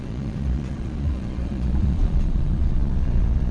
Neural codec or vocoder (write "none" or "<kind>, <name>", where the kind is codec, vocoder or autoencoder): vocoder, Vocos